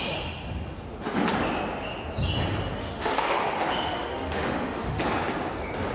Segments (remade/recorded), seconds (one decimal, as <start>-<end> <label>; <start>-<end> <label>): 0.0-2.8 recorded; 2.8-3.4 remade; 3.4-3.8 recorded; 3.8-5.0 remade; 5.0-5.9 recorded